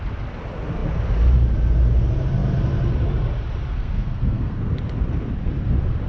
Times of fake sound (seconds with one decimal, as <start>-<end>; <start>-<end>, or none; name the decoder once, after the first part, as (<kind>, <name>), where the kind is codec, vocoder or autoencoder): 3.7-4.7 (codec, SNAC)